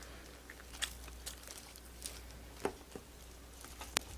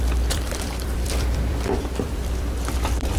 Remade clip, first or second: second